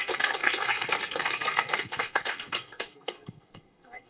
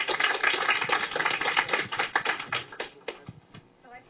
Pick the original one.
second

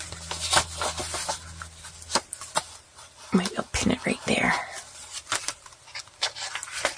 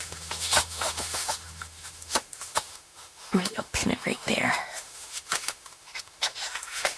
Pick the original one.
first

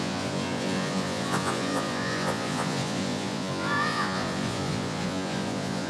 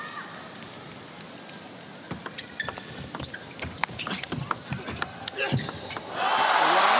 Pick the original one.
second